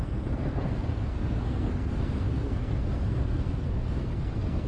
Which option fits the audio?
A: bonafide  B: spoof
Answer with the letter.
B